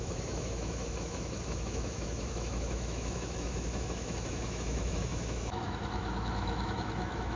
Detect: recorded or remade remade